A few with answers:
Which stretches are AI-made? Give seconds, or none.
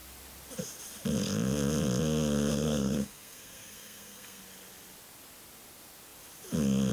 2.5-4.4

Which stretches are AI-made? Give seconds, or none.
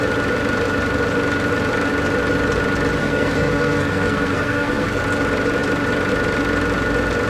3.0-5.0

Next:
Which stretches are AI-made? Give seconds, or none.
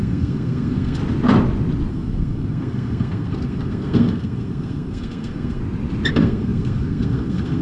0.0-1.0; 1.9-5.6; 6.1-7.6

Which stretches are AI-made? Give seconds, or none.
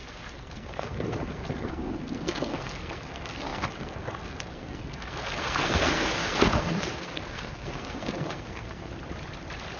0.0-8.9